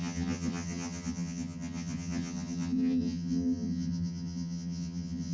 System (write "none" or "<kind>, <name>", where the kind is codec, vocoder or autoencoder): vocoder, HiFi-GAN